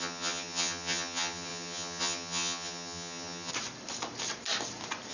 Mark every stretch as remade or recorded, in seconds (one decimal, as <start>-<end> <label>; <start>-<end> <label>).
0.0-3.5 remade; 3.5-5.1 recorded